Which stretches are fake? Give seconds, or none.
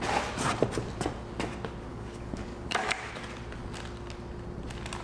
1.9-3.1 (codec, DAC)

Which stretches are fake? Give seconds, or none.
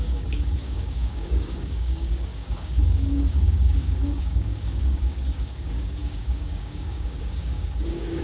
0.0-8.2 (codec, DAC)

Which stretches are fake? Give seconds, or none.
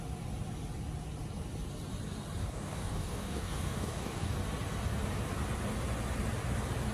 2.4-4.3 (codec, DAC)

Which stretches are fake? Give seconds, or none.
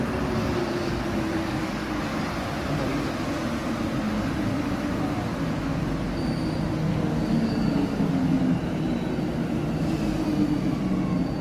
0.6-2.0 (codec, DAC); 6.9-8.4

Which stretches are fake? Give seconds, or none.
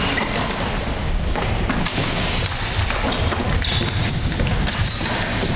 1.0-1.5 (codec, DAC); 1.9-2.4; 4.0-4.5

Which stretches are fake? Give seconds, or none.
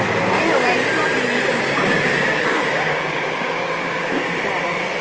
1.5-4.4 (codec, DAC)